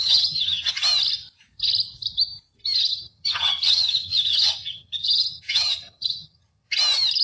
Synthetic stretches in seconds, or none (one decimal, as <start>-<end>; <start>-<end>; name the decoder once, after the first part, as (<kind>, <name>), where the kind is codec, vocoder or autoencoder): 0.0-0.7 (vocoder, HiFi-GAN); 2.9-6.7